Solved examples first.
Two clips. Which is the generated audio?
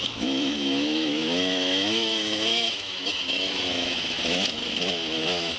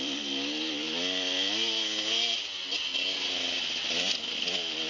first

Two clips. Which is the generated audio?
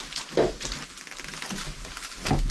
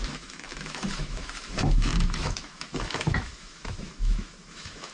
second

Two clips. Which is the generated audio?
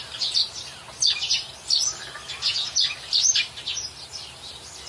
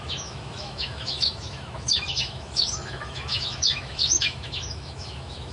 second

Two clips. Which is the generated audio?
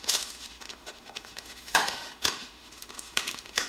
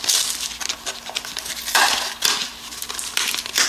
first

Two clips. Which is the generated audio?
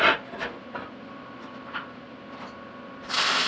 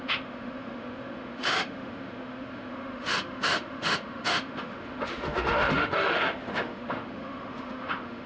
second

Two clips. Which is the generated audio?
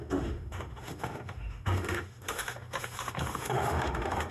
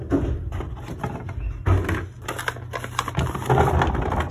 first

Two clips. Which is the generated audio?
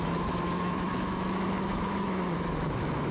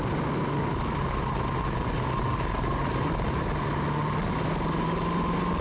first